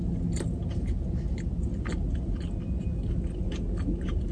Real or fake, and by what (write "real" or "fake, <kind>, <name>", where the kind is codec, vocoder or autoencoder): real